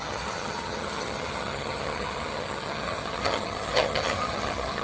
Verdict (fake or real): fake